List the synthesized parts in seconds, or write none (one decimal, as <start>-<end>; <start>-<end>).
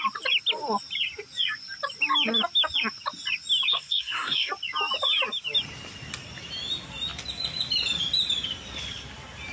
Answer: 3.7-4.5